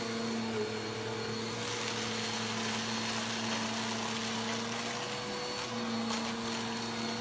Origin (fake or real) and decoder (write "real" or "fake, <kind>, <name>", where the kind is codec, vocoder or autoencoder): real